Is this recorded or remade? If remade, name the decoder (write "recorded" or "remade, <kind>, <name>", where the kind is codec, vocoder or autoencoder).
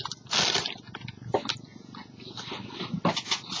recorded